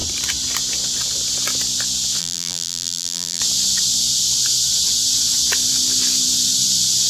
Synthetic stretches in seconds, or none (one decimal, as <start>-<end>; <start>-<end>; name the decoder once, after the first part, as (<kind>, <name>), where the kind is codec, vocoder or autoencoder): 2.2-3.4 (vocoder, BigVGAN v2)